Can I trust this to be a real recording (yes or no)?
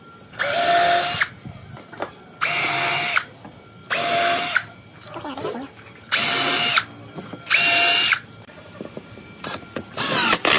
yes